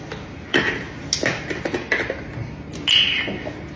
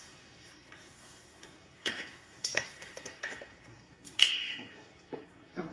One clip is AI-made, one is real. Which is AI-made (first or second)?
second